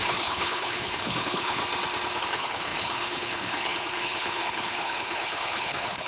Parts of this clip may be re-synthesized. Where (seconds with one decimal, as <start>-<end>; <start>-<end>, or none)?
0.0-1.6; 2.2-6.1